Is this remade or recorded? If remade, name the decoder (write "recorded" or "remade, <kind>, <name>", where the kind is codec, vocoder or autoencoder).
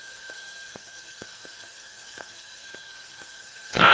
remade, codec, SNAC